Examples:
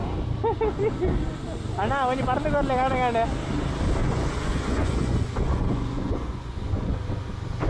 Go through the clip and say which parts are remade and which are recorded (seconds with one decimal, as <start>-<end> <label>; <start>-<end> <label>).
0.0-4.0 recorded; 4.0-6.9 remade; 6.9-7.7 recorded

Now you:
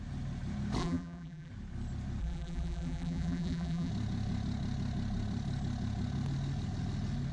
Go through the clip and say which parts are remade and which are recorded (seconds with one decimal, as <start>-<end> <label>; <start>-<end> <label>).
0.0-0.8 recorded; 0.8-1.5 remade; 1.5-2.2 recorded; 2.2-3.9 remade; 3.9-7.3 recorded

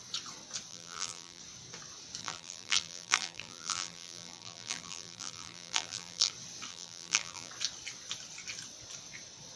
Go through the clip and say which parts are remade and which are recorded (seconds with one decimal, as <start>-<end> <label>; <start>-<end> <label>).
0.0-0.7 recorded; 0.7-1.4 remade; 1.4-2.2 recorded; 2.2-6.3 remade; 6.3-6.7 recorded; 6.7-7.5 remade; 7.5-9.6 recorded